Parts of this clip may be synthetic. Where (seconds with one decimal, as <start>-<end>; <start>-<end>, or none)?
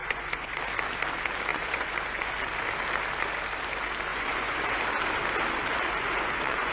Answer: 0.0-0.6; 1.5-2.3; 4.1-4.8; 5.7-6.7